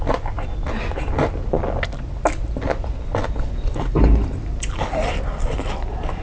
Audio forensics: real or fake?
real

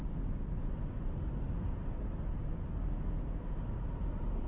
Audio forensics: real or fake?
real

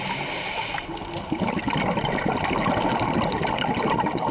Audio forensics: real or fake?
real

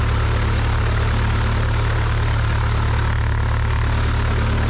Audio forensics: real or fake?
real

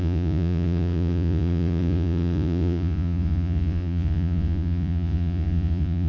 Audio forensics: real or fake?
fake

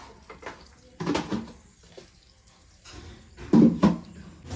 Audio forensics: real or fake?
real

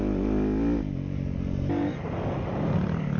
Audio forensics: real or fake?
real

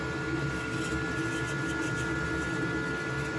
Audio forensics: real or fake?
real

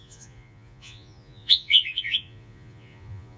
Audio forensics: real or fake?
fake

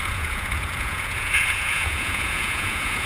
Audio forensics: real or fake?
fake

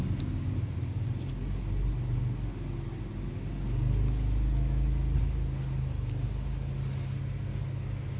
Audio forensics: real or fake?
real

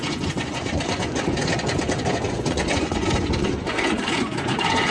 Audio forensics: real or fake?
fake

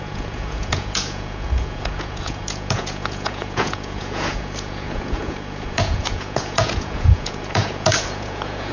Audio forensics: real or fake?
fake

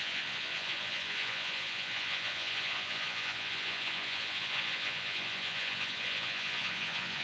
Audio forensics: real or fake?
fake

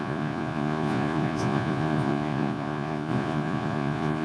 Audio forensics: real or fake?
fake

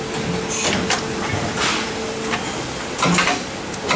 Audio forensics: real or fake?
real